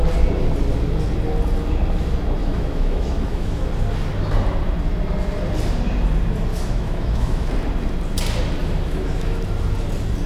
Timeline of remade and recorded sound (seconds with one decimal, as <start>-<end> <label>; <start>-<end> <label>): 0.0-2.4 recorded; 2.4-3.7 remade; 3.7-6.5 recorded; 6.5-7.5 remade; 7.5-8.6 recorded; 8.6-9.4 remade; 9.4-10.3 recorded